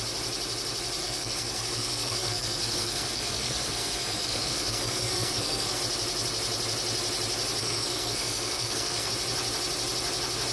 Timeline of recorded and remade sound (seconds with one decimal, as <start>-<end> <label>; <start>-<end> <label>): 0.0-1.0 recorded; 1.0-5.8 remade; 5.8-7.6 recorded; 7.6-9.1 remade; 9.1-10.5 recorded